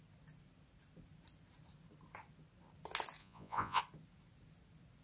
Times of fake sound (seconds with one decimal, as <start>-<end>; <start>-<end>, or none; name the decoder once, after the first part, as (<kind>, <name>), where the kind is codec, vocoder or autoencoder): 3.2-3.8 (vocoder, Vocos)